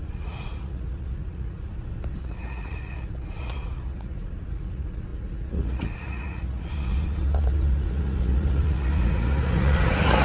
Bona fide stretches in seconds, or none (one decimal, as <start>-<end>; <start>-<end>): 1.7-2.2